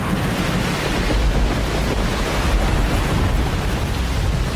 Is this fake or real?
real